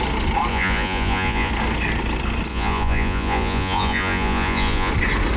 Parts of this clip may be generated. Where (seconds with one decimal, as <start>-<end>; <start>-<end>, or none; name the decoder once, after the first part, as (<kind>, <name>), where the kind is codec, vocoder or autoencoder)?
0.5-1.5 (vocoder, Vocos); 2.5-4.9